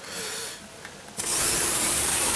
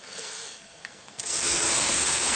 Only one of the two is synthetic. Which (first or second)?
second